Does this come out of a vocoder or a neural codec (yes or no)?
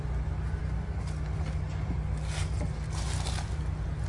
no